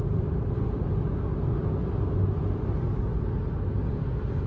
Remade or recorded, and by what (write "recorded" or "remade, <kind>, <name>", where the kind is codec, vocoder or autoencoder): recorded